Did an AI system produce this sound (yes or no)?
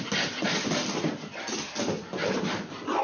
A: no